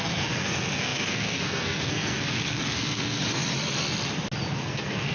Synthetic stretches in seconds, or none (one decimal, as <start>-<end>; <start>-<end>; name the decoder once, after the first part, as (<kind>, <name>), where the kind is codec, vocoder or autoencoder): 0.0-3.2 (codec, SNAC); 4.6-5.1